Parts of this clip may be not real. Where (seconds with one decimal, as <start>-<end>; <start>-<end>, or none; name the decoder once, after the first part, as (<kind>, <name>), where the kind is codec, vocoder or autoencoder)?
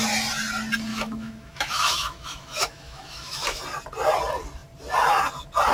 0.9-3.6 (autoencoder, DAC-VAE)